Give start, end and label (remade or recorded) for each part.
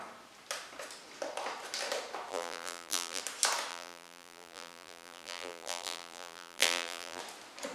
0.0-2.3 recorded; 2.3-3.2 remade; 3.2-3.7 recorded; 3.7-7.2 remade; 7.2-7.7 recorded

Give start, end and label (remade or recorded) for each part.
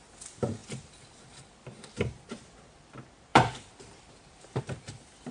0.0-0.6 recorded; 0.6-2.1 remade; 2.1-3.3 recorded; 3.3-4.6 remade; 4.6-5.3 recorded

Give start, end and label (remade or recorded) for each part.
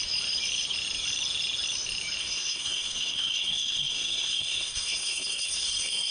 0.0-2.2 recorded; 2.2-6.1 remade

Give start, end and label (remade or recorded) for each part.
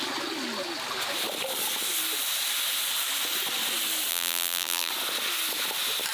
0.0-4.1 recorded; 4.1-4.9 remade; 4.9-6.1 recorded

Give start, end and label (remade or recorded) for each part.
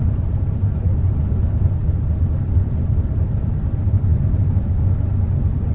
0.0-4.1 recorded; 4.1-4.9 remade; 4.9-5.7 recorded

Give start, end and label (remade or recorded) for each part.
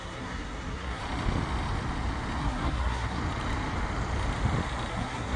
0.0-1.0 remade; 1.0-2.4 recorded; 2.4-3.2 remade; 3.2-4.9 recorded; 4.9-5.4 remade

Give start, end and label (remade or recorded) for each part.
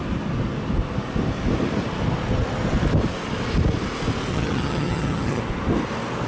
0.0-4.3 recorded; 4.3-5.4 remade; 5.4-6.3 recorded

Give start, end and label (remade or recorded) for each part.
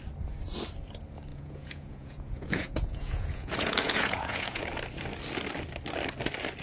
0.0-1.3 recorded; 1.3-4.6 remade; 4.6-6.6 recorded